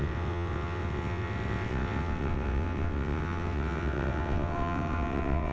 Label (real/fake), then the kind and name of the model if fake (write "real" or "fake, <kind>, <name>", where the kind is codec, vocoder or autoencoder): fake, vocoder, WaveNeXt